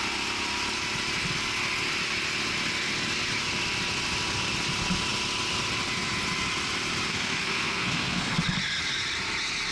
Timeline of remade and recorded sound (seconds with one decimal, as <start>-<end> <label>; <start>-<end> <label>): 0.0-7.1 recorded; 7.1-8.3 remade; 8.3-9.7 recorded